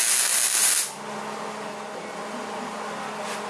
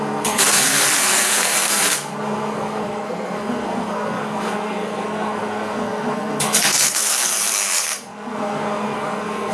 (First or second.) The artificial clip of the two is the second